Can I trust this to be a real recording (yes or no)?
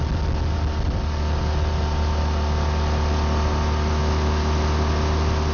yes